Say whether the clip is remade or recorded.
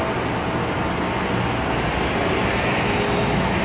recorded